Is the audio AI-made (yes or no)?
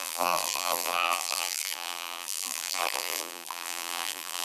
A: yes